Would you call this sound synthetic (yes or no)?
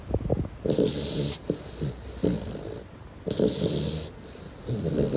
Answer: no